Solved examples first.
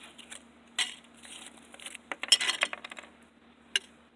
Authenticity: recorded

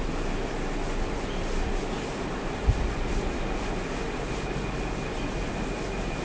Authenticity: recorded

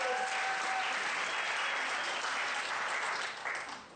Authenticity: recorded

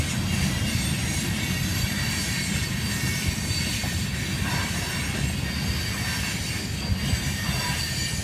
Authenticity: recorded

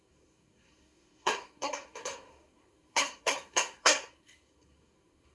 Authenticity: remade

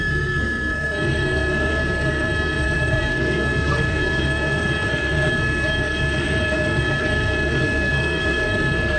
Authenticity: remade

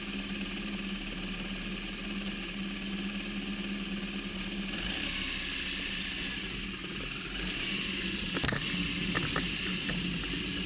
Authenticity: recorded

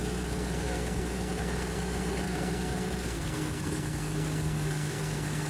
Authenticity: remade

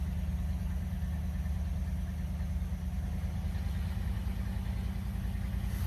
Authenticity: recorded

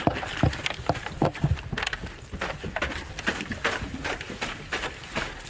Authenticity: recorded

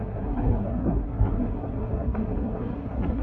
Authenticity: remade